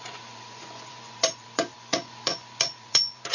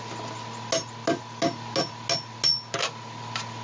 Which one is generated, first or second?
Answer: first